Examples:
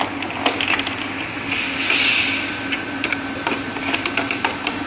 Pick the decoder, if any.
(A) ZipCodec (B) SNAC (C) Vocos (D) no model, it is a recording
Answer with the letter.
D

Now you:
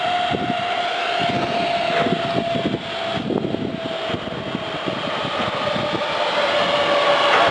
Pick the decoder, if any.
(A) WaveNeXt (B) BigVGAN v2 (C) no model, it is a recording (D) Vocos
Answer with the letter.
C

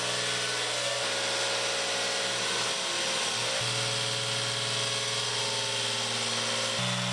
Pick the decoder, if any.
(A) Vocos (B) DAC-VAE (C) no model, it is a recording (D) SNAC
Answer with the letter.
C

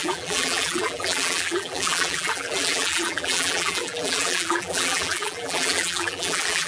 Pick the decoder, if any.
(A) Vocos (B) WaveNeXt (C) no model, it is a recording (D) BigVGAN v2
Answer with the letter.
D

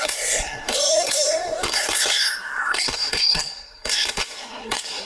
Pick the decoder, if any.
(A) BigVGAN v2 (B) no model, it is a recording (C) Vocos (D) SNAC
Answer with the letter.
D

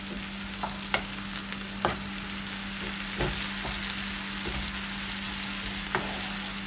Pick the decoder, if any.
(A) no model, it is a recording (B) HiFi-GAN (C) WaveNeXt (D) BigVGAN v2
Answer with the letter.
A